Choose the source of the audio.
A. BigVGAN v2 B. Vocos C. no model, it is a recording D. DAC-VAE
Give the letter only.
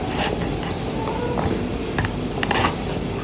C